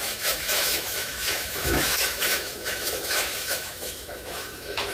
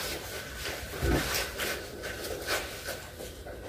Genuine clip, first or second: second